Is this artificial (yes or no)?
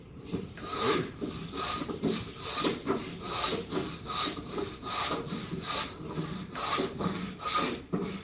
yes